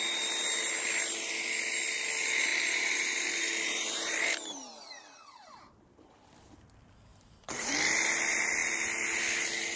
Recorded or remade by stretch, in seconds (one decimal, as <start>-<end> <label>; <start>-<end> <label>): 0.0-2.5 recorded; 2.5-5.8 remade; 5.8-7.1 recorded; 7.1-7.7 remade; 7.7-9.8 recorded